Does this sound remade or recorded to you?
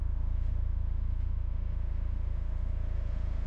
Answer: remade